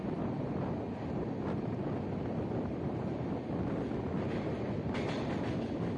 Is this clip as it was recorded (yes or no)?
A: yes